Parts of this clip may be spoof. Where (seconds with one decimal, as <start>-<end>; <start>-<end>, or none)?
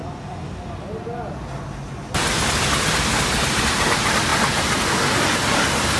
none